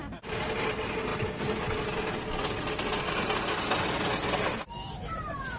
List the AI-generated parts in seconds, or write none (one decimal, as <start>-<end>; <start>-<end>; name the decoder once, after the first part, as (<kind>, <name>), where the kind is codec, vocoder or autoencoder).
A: none